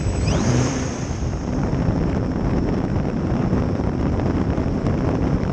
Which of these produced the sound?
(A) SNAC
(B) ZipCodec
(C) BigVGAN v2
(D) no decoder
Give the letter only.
C